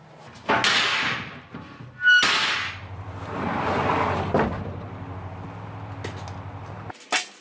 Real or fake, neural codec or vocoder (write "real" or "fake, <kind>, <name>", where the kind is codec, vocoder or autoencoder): real